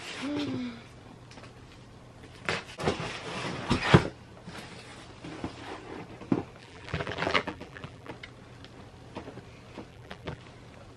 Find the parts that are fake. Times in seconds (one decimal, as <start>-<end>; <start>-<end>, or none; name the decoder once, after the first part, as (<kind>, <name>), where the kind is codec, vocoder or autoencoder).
6.6-8.1 (vocoder, BigVGAN v2); 9.9-10.4